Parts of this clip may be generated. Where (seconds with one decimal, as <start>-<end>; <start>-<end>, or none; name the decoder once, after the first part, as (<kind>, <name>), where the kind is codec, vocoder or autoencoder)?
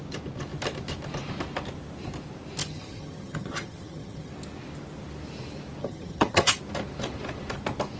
2.6-4.3 (vocoder, HiFi-GAN); 5.8-6.6